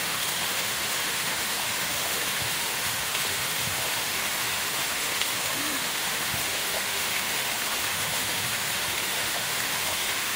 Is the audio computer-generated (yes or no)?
yes